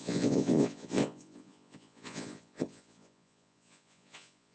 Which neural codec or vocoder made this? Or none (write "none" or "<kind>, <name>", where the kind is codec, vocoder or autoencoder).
vocoder, Vocos